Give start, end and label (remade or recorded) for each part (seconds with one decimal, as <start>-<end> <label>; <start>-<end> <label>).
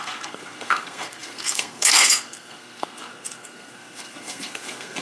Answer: 0.0-5.0 remade